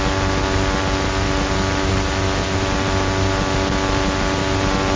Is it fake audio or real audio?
real